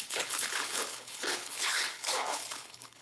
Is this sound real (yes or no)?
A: no